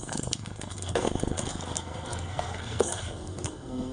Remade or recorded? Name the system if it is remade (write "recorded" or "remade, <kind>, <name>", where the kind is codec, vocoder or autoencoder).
remade, codec, SNAC